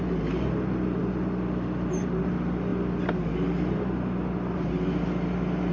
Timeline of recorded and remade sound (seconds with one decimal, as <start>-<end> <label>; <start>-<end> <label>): 0.0-5.7 recorded